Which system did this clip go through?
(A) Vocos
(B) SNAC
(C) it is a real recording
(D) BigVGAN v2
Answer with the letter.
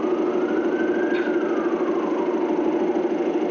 C